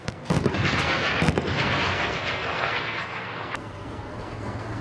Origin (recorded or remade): remade